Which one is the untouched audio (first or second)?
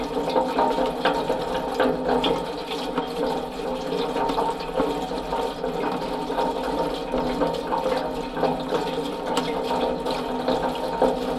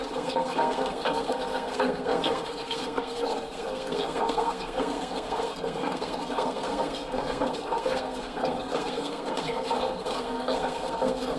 first